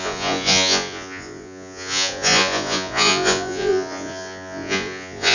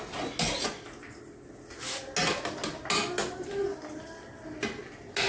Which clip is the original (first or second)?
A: second